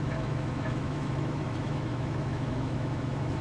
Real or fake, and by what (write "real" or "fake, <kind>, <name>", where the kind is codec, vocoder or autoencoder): fake, autoencoder, DAC-VAE